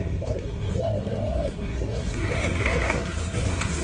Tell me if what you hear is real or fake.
fake